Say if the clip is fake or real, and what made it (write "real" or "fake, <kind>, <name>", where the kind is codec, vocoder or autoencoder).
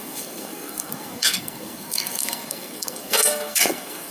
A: fake, codec, SNAC